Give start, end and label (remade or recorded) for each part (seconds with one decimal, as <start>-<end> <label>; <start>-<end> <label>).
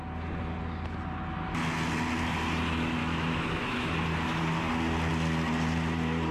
0.0-3.0 recorded; 3.0-3.9 remade; 3.9-6.3 recorded